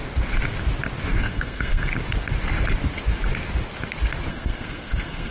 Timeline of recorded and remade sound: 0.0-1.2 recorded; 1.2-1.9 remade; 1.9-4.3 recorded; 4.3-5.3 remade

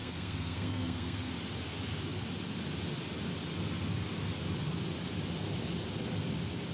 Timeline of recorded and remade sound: 0.0-1.3 remade; 1.3-6.7 recorded

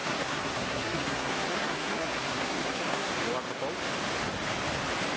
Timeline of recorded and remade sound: 0.0-3.1 remade; 3.1-5.2 recorded

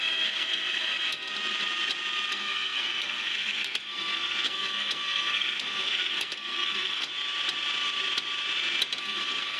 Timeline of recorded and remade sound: 0.0-1.3 remade; 1.3-2.3 recorded; 2.3-7.1 remade; 7.1-9.0 recorded; 9.0-9.6 remade

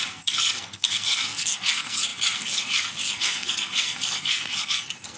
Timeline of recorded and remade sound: 0.0-5.2 remade

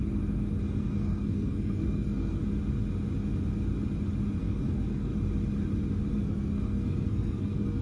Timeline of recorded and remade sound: 0.0-0.8 recorded; 0.8-2.4 remade; 2.4-4.4 recorded; 4.4-5.1 remade; 5.1-6.1 recorded; 6.1-7.8 remade